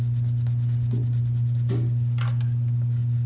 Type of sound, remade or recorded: recorded